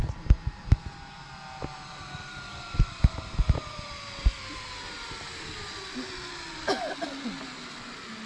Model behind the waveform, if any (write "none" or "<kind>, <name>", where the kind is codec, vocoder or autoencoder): none